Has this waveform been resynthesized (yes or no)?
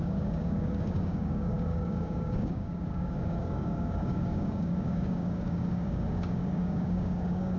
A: yes